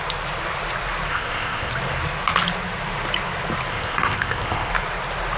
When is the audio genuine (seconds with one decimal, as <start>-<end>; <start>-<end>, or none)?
0.0-1.1; 1.7-3.7; 4.7-5.4